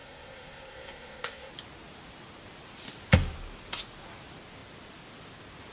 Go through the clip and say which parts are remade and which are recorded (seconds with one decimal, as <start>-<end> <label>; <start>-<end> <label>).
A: 0.0-1.5 remade; 1.5-5.7 recorded